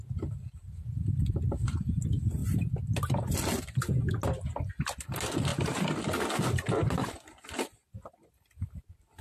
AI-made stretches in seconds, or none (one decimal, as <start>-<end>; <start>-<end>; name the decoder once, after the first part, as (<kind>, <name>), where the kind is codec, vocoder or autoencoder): none